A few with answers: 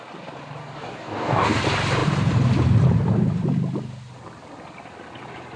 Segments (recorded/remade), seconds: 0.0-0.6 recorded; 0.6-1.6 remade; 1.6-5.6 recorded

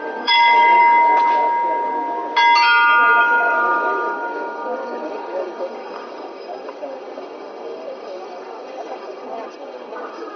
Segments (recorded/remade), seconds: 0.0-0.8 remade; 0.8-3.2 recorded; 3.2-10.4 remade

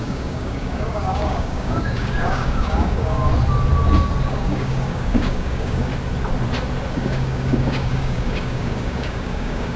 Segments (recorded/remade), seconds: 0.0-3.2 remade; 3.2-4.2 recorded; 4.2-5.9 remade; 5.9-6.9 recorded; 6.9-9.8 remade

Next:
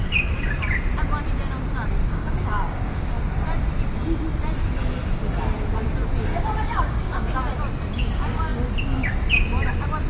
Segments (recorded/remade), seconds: 0.0-2.0 recorded; 2.0-3.2 remade; 3.2-6.3 recorded; 6.3-7.4 remade; 7.4-10.1 recorded

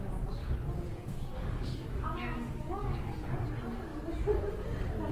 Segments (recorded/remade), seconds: 0.0-0.4 recorded; 0.4-3.5 remade; 3.5-5.1 recorded

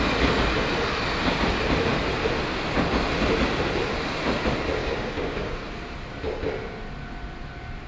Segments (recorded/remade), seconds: 0.0-4.8 recorded; 4.8-5.7 remade; 5.7-7.9 recorded